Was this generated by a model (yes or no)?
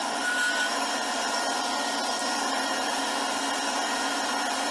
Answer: no